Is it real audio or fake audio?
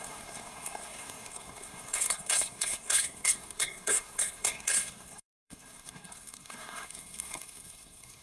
fake